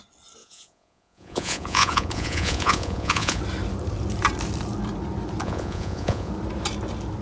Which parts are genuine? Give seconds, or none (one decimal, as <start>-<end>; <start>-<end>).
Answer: 0.0-0.4; 3.4-5.4; 6.3-7.2

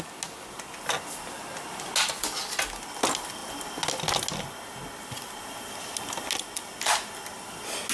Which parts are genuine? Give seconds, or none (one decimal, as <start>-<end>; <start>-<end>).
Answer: 0.0-7.9

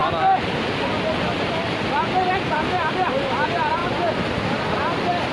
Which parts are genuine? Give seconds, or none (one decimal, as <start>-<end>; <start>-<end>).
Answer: 0.0-5.3

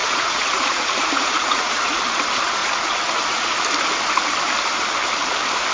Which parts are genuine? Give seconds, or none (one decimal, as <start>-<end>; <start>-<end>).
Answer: 1.9-2.6; 3.5-5.7

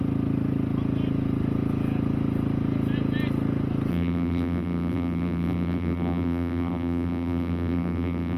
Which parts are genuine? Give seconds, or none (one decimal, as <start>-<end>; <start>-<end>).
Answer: 0.0-3.9

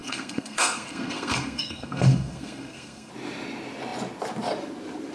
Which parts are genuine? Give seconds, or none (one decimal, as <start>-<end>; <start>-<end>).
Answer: 3.1-5.1

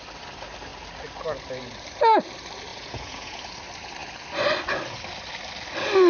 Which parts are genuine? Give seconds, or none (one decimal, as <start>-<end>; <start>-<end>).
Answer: 0.0-2.7; 3.4-6.1

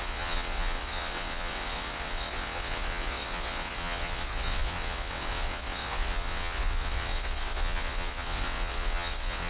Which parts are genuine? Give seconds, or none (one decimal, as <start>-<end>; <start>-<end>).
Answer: none